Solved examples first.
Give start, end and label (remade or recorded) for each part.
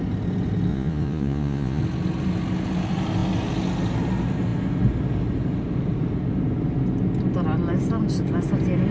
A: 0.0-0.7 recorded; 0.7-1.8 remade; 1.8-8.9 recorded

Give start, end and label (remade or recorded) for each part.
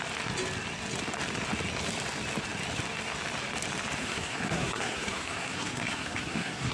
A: 0.0-4.0 recorded; 4.0-6.7 remade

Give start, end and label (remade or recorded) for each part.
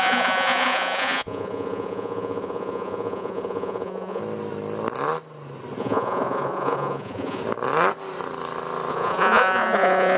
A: 0.0-4.2 remade; 4.2-5.8 recorded; 5.8-7.4 remade; 7.4-8.9 recorded; 8.9-10.2 remade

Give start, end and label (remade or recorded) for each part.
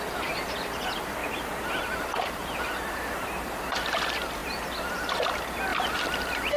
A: 0.0-1.2 recorded; 1.2-3.6 remade; 3.6-4.4 recorded; 4.4-4.9 remade; 4.9-5.7 recorded; 5.7-6.6 remade